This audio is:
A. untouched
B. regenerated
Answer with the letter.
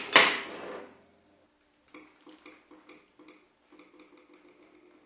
A